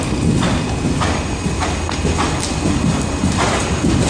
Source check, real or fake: real